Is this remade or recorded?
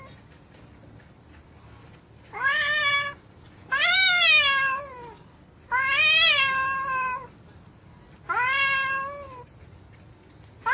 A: recorded